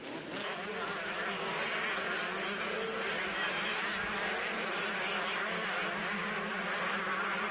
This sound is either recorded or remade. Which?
recorded